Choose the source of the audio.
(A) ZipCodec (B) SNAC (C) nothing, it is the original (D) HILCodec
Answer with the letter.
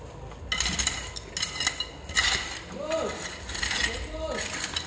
C